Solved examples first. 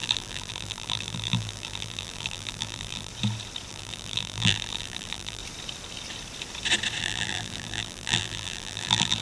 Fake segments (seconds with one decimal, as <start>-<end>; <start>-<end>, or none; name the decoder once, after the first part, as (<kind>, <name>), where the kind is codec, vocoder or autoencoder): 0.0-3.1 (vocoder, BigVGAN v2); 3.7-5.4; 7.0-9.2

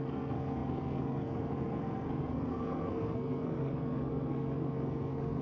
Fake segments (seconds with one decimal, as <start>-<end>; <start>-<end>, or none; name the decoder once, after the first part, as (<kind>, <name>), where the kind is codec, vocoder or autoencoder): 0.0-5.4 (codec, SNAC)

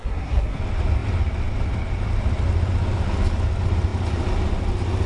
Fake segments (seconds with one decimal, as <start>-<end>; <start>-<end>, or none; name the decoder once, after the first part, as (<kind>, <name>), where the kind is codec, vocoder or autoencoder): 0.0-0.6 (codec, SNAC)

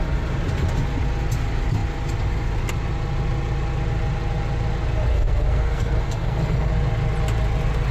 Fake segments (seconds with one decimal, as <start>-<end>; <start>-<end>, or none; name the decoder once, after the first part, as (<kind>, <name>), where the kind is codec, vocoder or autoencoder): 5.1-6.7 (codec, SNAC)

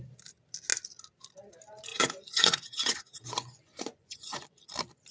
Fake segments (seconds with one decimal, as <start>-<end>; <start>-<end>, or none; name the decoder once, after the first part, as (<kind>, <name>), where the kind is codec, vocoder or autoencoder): 1.9-4.6 (vocoder, Vocos)

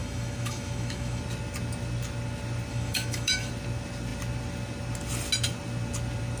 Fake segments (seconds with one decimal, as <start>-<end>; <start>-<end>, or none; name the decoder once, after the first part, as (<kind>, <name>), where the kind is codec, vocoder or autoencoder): 0.0-1.2 (autoencoder, DAC-VAE); 2.7-3.5